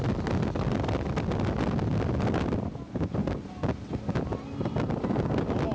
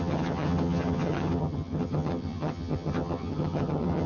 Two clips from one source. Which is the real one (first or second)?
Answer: first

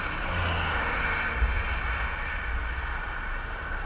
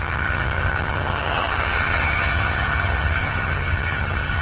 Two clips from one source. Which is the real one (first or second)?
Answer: first